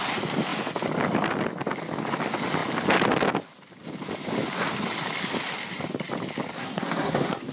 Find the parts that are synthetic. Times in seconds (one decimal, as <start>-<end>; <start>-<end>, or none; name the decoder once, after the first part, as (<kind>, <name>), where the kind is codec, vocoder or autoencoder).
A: 6.6-7.5 (codec, SNAC)